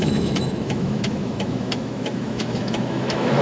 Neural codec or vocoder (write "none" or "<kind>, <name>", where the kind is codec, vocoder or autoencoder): autoencoder, DAC-VAE